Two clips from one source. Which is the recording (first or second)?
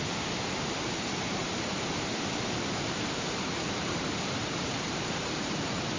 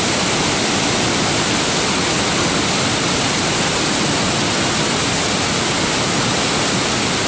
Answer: second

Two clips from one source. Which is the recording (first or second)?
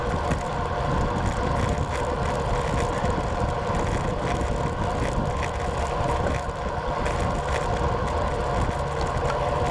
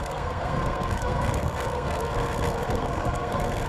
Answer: first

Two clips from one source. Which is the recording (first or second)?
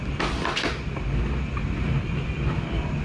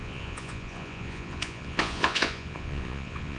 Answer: first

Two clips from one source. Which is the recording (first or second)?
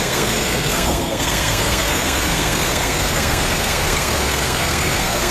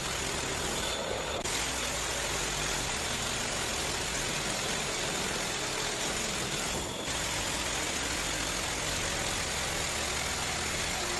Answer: second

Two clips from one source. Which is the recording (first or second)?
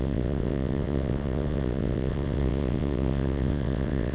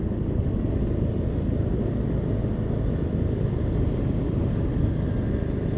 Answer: second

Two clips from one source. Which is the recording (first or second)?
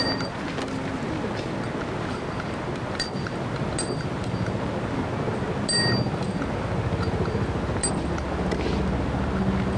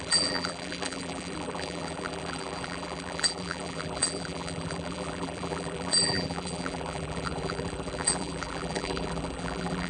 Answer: first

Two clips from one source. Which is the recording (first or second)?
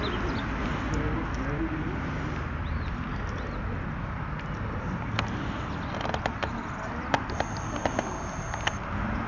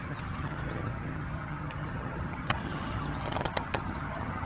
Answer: first